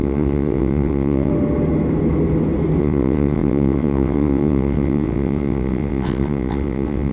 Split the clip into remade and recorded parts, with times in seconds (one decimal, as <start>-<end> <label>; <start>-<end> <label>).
0.0-1.3 remade; 1.3-2.8 recorded; 2.8-7.1 remade